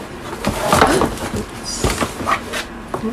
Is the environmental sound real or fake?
real